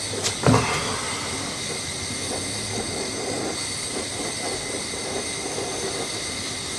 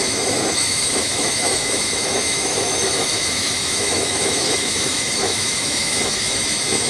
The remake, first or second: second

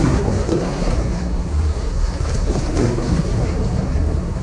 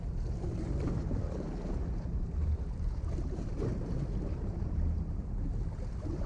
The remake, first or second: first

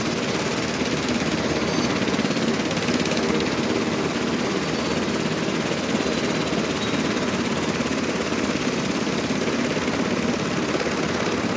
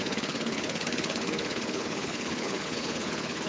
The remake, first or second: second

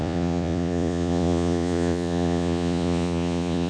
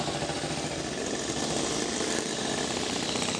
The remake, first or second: first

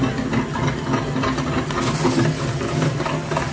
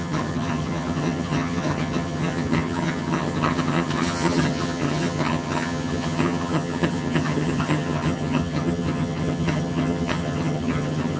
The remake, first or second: second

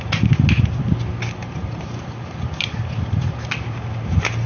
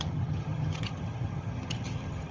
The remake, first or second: second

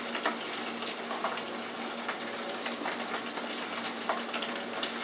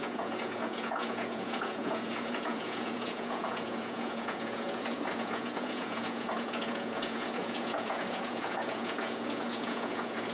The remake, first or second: second